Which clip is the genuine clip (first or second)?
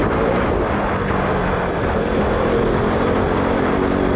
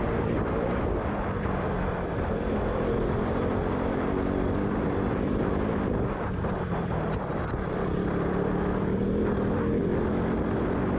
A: first